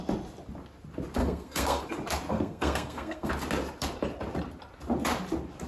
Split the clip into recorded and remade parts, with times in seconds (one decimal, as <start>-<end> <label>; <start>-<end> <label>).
0.0-1.2 recorded; 1.2-1.8 remade; 1.8-2.3 recorded; 2.3-3.3 remade; 3.3-5.7 recorded